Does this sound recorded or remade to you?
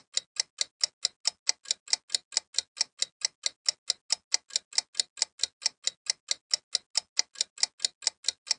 recorded